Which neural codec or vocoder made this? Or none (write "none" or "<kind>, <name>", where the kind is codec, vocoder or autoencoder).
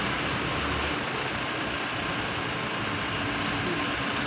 none